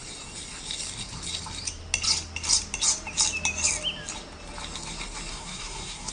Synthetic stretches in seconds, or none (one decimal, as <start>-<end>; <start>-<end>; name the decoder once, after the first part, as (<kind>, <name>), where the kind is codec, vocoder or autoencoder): 5.3-6.1 (codec, SNAC)